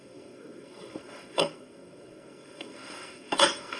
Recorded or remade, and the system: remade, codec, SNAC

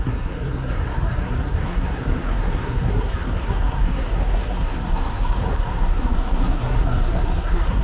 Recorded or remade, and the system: remade, codec, SNAC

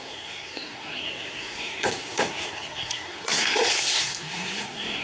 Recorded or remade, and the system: remade, codec, SNAC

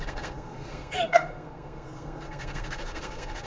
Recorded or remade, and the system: remade, codec, SNAC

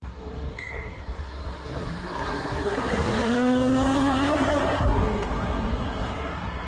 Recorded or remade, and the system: remade, codec, SNAC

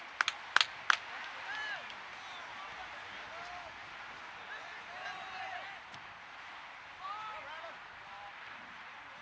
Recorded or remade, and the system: recorded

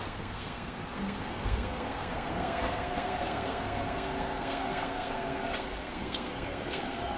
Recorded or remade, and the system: remade, codec, SNAC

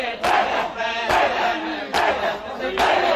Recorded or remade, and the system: recorded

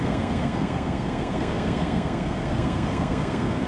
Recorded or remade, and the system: remade, codec, SNAC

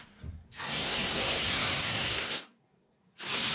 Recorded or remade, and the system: remade, codec, SNAC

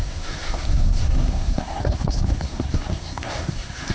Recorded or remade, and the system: remade, codec, SNAC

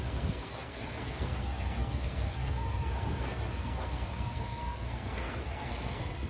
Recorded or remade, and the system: remade, codec, SNAC